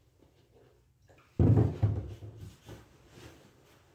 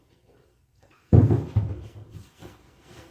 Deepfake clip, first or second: second